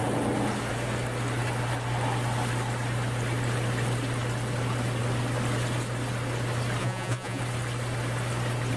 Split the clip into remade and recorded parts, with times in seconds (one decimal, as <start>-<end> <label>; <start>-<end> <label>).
0.0-6.8 recorded; 6.8-7.4 remade; 7.4-8.8 recorded